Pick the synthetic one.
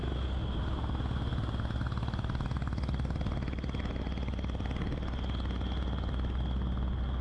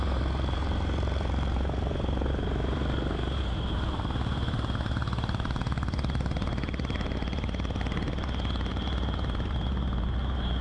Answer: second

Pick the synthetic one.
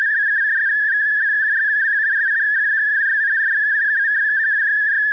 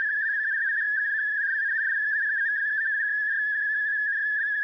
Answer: second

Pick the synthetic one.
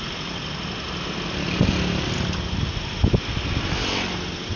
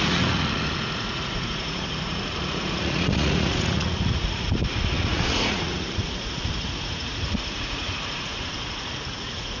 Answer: second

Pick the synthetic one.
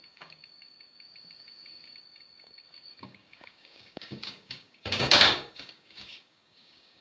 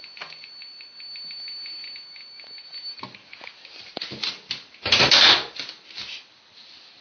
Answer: first